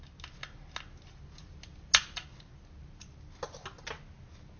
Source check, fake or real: real